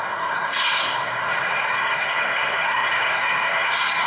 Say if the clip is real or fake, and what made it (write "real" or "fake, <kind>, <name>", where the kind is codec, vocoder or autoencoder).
fake, codec, SNAC